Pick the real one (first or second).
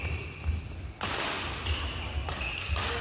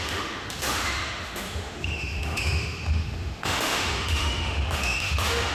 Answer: first